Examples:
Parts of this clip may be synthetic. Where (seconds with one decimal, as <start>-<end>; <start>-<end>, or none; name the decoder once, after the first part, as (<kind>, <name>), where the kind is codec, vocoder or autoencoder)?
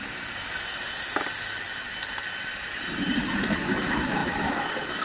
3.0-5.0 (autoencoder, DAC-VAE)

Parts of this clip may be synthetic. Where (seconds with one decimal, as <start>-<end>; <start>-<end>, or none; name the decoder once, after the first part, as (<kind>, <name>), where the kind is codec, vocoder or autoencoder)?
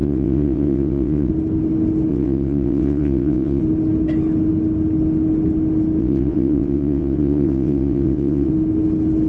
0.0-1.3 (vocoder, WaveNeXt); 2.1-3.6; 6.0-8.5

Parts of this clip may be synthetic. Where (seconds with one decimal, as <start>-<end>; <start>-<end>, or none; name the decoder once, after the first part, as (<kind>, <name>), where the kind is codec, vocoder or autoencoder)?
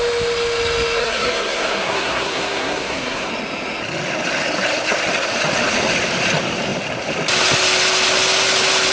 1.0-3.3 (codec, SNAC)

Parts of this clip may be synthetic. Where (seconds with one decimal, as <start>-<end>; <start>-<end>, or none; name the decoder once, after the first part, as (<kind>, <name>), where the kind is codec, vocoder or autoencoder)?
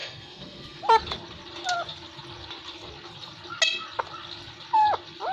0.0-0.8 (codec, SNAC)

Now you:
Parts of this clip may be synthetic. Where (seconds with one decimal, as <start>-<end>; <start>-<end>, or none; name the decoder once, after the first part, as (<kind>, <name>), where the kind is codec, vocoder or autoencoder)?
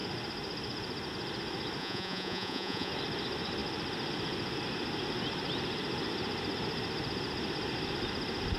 1.8-2.9 (vocoder, Vocos)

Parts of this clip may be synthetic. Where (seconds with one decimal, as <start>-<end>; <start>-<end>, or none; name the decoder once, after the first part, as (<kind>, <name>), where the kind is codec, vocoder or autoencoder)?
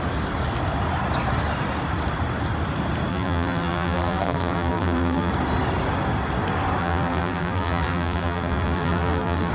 3.1-5.3 (vocoder, BigVGAN v2); 6.8-9.5